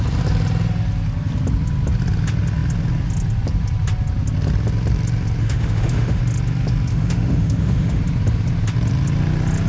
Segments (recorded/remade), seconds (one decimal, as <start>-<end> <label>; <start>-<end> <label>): 0.0-5.4 recorded; 5.4-6.2 remade; 6.2-6.9 recorded; 6.9-8.0 remade; 8.0-9.7 recorded